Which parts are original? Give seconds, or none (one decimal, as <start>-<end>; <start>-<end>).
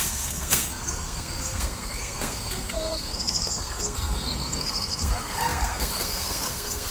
none